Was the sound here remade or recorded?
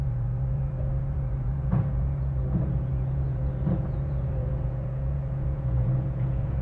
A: remade